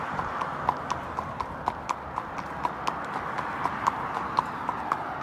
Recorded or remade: recorded